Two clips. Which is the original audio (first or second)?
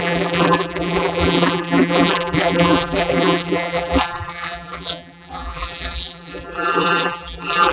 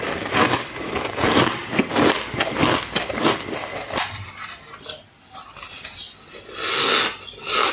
second